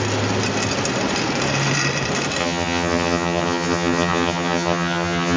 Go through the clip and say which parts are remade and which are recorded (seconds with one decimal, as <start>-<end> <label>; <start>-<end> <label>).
0.0-2.4 recorded; 2.4-5.4 remade